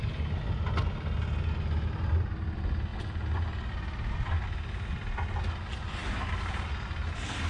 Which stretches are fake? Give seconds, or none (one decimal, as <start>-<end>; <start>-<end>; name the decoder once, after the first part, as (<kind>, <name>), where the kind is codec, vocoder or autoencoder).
none